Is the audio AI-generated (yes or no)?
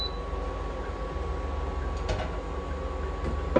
no